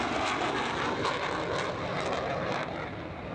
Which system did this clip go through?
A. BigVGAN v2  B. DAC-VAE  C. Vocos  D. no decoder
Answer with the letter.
D